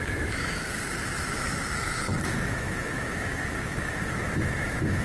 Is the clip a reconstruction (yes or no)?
yes